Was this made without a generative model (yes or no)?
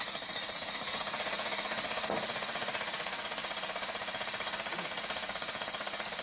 no